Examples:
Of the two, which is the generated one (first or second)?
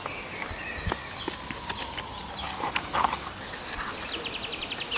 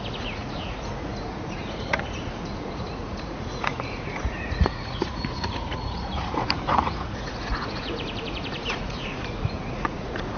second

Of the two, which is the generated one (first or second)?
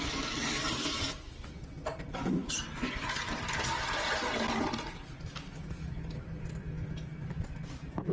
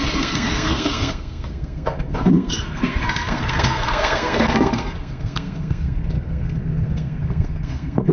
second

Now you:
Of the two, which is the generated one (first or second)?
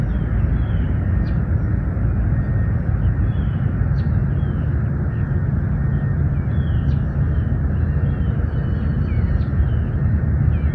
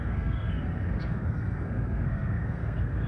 second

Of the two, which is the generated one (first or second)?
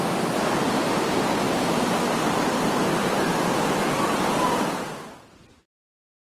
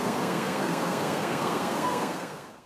second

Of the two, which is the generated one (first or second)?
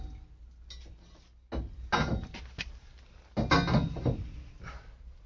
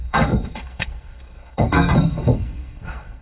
second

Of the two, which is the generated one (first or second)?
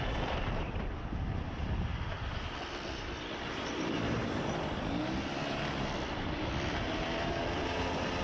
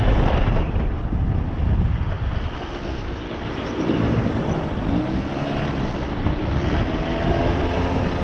first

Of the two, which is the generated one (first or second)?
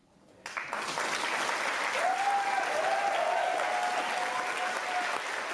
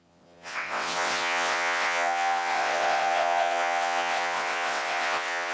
second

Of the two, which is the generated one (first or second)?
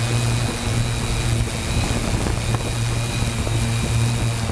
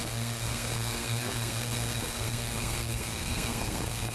second